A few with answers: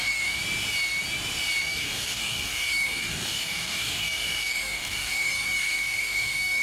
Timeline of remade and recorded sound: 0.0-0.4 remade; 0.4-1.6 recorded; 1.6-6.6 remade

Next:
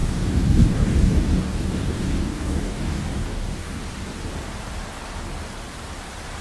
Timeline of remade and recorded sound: 0.0-3.8 remade; 3.8-6.4 recorded

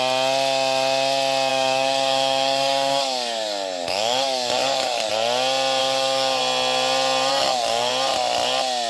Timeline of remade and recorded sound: 0.0-1.5 recorded; 1.5-5.1 remade; 5.1-5.8 recorded; 5.8-6.4 remade; 6.4-7.3 recorded; 7.3-7.9 remade; 7.9-8.9 recorded

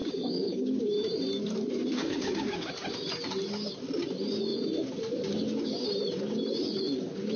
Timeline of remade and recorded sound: 0.0-0.8 remade; 0.8-1.9 recorded; 1.9-2.7 remade; 2.7-7.4 recorded

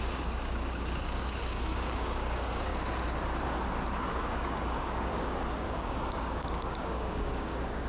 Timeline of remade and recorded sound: 0.0-2.7 remade; 2.7-4.1 recorded; 4.1-7.9 remade

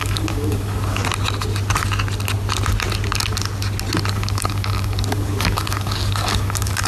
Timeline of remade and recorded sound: 0.0-1.0 remade; 1.0-4.1 recorded; 4.1-6.9 remade

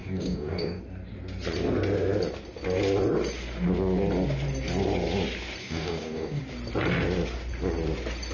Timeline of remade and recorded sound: 0.0-0.8 remade; 0.8-5.6 recorded; 5.6-6.4 remade; 6.4-8.3 recorded

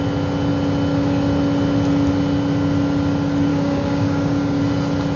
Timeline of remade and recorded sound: 0.0-3.5 recorded; 3.5-4.6 remade; 4.6-5.2 recorded